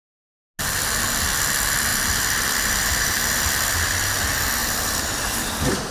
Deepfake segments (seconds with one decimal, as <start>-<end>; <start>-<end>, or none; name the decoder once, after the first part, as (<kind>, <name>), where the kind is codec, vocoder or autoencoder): 1.9-3.9 (vocoder, BigVGAN v2); 4.6-5.9